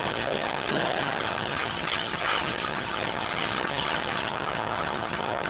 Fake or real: fake